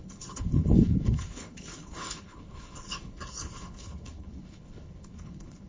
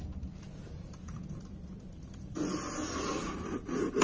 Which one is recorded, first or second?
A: second